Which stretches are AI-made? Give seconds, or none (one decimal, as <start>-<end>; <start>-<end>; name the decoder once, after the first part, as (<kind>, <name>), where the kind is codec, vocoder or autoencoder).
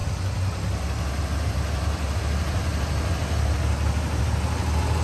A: none